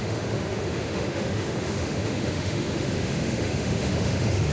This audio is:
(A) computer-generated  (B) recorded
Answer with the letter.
A